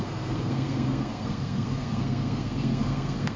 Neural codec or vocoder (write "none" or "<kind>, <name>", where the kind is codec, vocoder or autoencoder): codec, SNAC